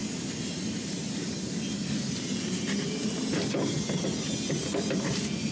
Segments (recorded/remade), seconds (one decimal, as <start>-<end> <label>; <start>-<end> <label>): 0.0-5.5 recorded